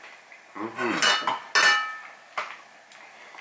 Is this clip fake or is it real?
real